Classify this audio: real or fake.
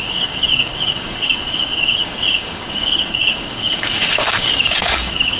fake